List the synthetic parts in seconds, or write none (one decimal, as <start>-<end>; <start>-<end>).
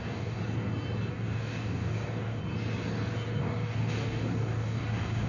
0.0-0.4; 1.1-2.4; 3.4-5.3